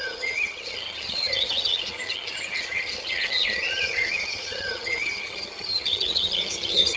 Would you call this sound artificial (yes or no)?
yes